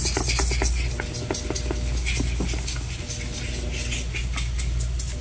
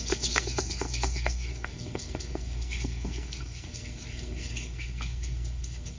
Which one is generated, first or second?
second